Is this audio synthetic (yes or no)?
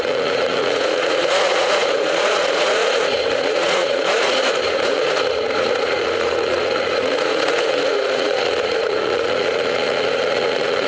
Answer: yes